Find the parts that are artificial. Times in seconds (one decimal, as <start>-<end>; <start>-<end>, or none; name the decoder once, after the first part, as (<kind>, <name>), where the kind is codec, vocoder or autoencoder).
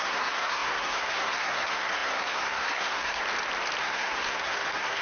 0.0-3.2 (codec, SNAC); 3.8-5.0